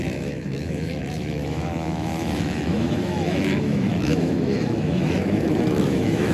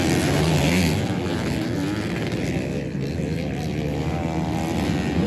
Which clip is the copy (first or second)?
first